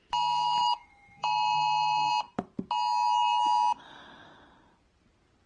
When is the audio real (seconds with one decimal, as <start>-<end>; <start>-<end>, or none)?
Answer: 0.0-0.6; 2.1-5.5

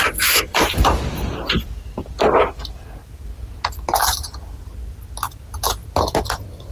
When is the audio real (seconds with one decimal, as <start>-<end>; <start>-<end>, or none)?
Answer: 0.0-6.7

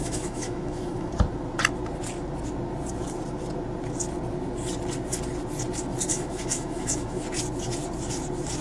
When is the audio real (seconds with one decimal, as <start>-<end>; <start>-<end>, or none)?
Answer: 1.1-6.1; 7.2-8.6

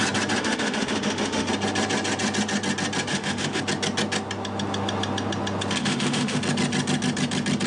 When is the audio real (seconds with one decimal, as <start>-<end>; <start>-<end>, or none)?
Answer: 0.0-0.4; 1.5-3.1; 3.6-5.8; 6.4-7.7

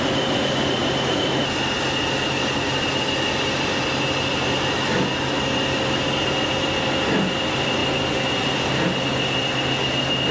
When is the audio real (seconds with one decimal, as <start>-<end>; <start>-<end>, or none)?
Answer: 0.0-10.3